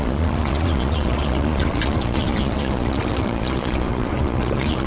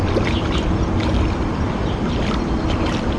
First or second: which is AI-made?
first